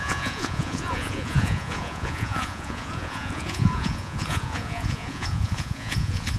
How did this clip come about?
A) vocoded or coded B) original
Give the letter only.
A